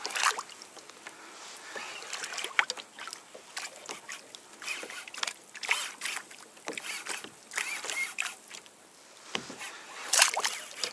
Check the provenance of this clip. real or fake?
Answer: real